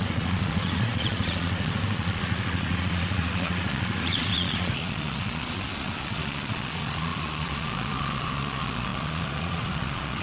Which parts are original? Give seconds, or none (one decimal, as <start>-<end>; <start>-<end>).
none